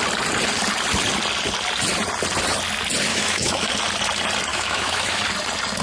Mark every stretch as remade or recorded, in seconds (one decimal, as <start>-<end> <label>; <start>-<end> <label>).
0.0-3.1 recorded; 3.1-3.7 remade; 3.7-4.5 recorded; 4.5-5.2 remade; 5.2-5.8 recorded

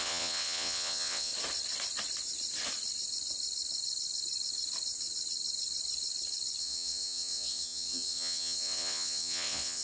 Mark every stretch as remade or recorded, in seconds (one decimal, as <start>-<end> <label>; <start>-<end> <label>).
0.0-1.3 remade; 1.3-6.6 recorded; 6.6-9.8 remade

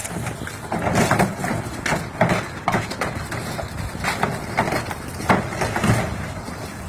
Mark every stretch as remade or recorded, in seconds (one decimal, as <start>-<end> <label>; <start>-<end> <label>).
0.0-4.1 recorded; 4.1-6.9 remade

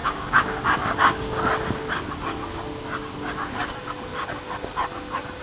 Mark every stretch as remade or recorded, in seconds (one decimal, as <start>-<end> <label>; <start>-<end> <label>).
0.0-1.4 remade; 1.4-5.4 recorded

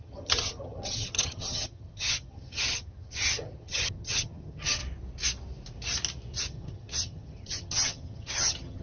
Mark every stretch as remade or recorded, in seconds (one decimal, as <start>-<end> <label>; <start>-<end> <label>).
0.0-4.8 remade; 4.8-6.4 recorded; 6.4-8.8 remade

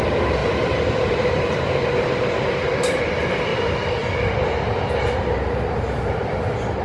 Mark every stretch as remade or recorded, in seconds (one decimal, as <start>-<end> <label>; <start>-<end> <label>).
0.0-0.4 recorded; 0.4-3.0 remade; 3.0-3.5 recorded; 3.5-4.3 remade; 4.3-6.8 recorded

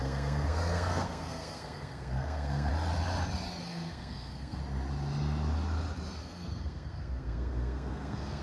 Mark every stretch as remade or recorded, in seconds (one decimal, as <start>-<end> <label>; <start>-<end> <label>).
0.0-2.7 remade; 2.7-3.6 recorded; 3.6-4.6 remade; 4.6-6.2 recorded; 6.2-8.4 remade